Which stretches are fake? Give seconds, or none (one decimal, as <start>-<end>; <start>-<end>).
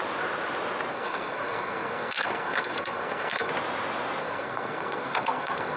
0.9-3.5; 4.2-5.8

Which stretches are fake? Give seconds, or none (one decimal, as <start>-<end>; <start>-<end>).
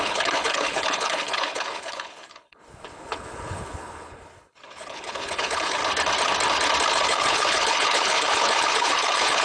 0.0-5.8; 6.9-9.4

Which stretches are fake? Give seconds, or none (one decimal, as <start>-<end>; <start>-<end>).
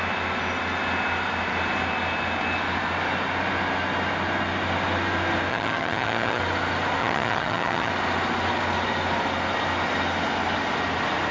5.5-6.4; 7.0-7.9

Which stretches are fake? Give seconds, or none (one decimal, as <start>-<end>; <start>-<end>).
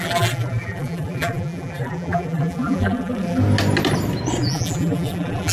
0.0-3.4; 4.4-5.5